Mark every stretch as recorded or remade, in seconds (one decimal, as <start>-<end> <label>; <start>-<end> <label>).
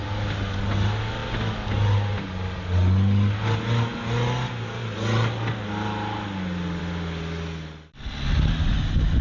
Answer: 0.0-9.2 recorded